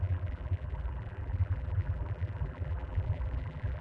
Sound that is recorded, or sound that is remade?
remade